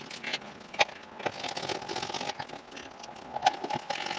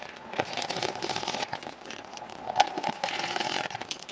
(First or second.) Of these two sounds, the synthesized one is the second